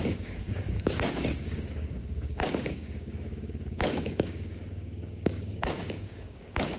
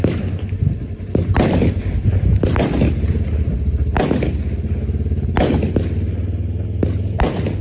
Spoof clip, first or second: first